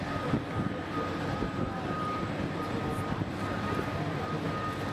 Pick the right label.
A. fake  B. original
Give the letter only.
A